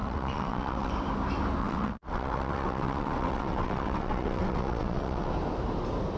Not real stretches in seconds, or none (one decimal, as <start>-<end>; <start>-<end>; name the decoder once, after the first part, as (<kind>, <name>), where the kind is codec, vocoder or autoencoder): 0.0-0.9 (vocoder, WaveNeXt); 1.6-5.3